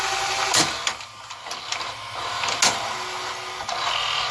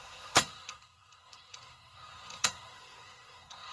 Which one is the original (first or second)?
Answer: first